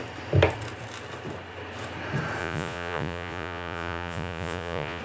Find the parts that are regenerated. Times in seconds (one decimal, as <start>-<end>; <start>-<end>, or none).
2.4-5.0